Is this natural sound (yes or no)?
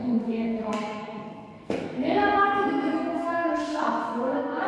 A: no